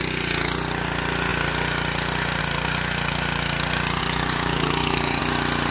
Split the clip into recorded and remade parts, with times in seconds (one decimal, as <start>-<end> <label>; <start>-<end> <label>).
0.0-4.0 recorded; 4.0-5.2 remade; 5.2-5.7 recorded